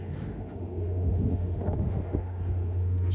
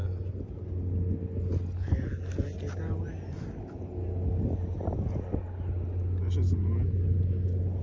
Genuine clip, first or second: second